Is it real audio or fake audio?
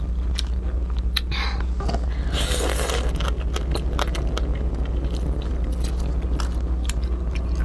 real